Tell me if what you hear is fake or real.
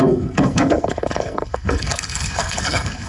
fake